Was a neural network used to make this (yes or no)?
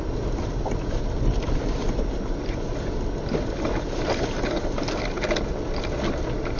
no